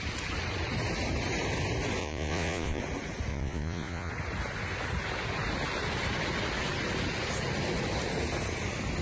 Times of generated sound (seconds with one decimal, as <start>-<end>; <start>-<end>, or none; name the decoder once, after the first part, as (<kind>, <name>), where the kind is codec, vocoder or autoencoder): 2.0-2.8 (vocoder, Vocos); 3.3-4.1